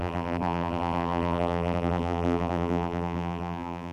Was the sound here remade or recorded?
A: remade